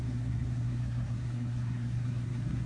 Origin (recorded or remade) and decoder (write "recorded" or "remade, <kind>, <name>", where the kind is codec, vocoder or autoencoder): remade, codec, SNAC